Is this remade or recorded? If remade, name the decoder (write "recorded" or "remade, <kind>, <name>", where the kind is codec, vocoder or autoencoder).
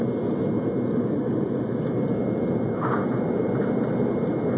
recorded